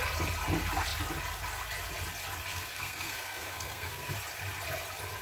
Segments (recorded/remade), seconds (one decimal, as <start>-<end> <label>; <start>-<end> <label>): 0.0-2.5 recorded; 2.5-4.1 remade; 4.1-5.2 recorded